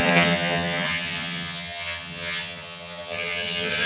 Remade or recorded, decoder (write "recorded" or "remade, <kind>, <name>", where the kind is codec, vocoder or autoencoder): remade, vocoder, HiFi-GAN